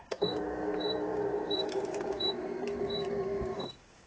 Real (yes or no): no